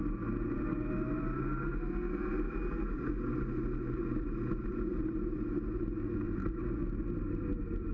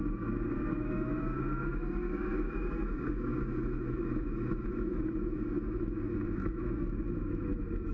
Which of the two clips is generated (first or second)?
second